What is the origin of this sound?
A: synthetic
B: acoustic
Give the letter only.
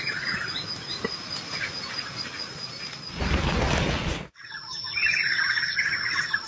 B